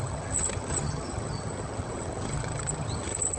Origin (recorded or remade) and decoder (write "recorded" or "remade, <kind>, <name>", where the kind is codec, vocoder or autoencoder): remade, vocoder, HiFi-GAN